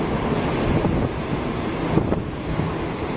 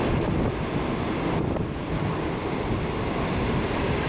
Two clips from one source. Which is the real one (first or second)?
first